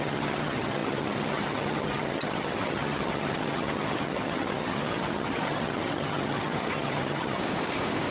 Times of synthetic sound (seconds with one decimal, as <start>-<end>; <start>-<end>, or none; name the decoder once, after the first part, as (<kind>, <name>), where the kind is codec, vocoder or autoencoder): 0.0-7.4 (vocoder, HiFi-GAN)